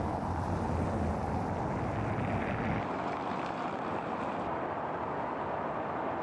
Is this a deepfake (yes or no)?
no